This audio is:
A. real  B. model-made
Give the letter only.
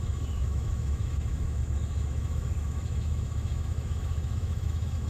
B